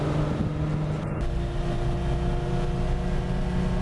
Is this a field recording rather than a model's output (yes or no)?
yes